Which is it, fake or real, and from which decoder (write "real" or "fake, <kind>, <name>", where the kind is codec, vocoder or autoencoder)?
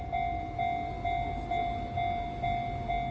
real